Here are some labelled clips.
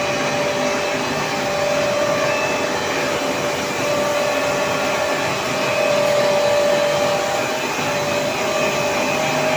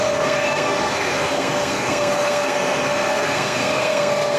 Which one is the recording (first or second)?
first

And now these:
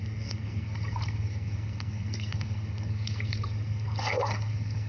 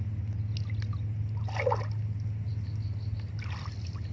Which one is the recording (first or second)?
second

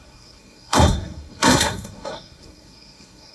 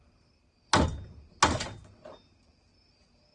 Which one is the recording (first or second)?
second